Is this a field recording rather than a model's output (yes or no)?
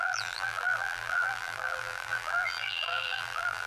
no